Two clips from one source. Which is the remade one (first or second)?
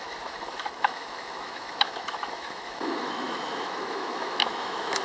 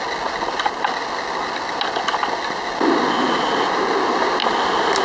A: first